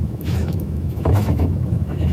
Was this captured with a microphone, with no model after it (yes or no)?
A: no